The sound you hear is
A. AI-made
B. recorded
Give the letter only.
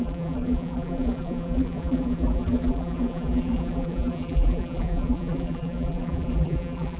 A